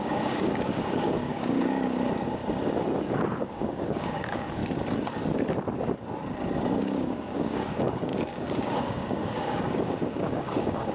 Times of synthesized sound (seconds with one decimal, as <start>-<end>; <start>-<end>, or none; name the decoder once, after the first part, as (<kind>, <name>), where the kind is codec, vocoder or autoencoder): 0.0-2.4 (codec, DAC); 3.4-4.6; 6.8-10.9